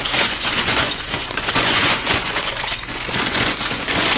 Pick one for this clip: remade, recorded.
remade